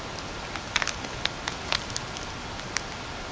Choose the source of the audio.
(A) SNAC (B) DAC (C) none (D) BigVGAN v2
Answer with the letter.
C